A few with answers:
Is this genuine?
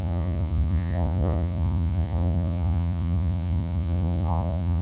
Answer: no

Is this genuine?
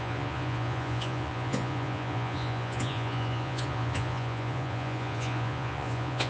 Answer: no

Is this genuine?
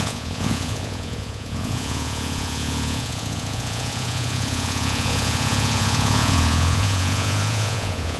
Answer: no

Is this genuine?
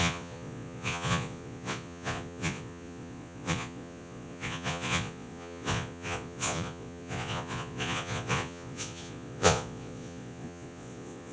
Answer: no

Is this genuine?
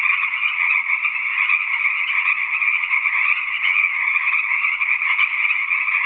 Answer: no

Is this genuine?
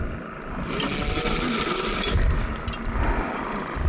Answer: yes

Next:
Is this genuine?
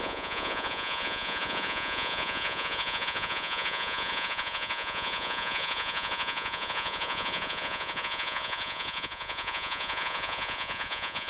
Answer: no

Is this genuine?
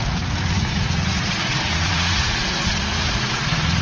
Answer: no